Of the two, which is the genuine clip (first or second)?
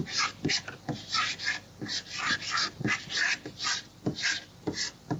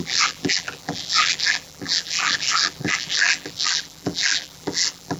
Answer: first